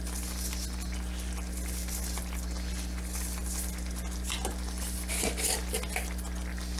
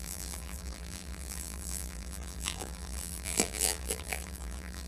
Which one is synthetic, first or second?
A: second